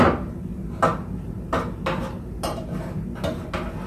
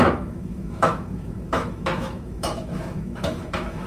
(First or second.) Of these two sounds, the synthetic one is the second